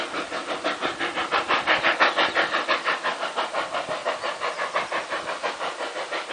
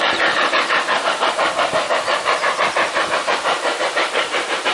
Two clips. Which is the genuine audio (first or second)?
first